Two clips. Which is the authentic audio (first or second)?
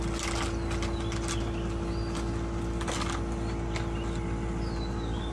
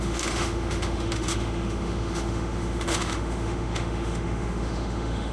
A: first